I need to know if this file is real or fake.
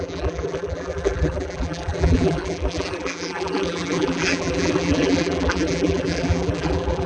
fake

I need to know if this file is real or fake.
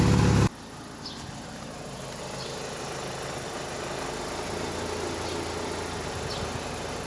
real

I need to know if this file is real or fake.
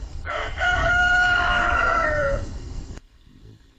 fake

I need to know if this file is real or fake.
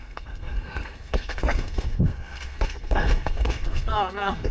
fake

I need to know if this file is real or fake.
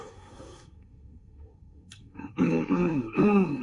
fake